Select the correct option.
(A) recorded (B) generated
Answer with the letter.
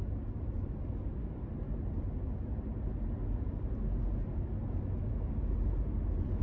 A